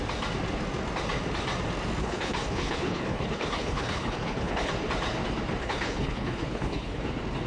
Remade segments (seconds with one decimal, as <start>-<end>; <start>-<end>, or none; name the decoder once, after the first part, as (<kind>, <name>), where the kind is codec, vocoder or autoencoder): 2.0-4.7 (codec, HILCodec); 5.6-7.0